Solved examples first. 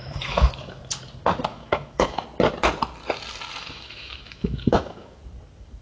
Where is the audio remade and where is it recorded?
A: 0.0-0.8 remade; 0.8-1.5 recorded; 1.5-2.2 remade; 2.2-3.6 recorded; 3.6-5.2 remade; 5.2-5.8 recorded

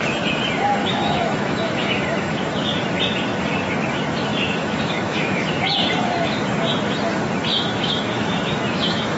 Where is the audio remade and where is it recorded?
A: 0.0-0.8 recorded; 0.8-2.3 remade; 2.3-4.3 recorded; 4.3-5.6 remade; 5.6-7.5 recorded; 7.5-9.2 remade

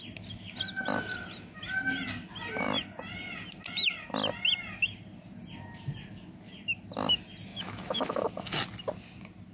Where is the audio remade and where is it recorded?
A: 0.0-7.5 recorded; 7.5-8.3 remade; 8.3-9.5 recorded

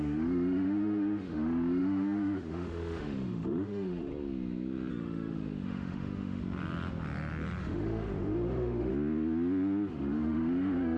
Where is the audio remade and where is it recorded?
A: 0.0-4.1 remade; 4.1-4.9 recorded; 4.9-6.4 remade; 6.4-7.6 recorded; 7.6-8.9 remade; 8.9-9.9 recorded; 9.9-11.0 remade

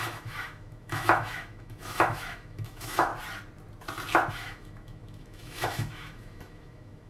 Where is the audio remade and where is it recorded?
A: 0.0-3.1 remade; 3.1-4.3 recorded; 4.3-7.1 remade